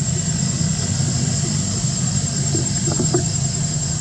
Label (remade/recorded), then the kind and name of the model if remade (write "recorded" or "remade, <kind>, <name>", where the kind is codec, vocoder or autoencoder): recorded